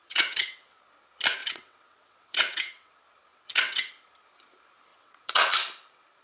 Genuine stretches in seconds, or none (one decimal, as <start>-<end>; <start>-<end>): 0.8-1.4; 2.9-3.3; 3.9-4.9; 5.5-6.2